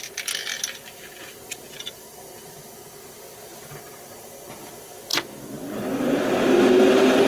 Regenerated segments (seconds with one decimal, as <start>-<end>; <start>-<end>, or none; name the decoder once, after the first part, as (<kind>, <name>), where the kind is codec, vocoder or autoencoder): none